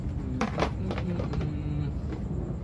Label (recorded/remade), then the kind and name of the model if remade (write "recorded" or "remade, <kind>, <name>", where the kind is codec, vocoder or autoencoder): recorded